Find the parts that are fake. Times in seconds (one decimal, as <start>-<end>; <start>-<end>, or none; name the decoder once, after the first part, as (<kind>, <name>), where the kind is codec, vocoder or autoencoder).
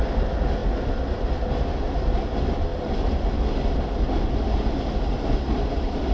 none